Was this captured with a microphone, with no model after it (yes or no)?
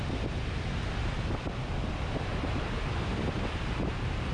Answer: yes